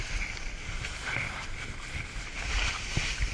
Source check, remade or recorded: recorded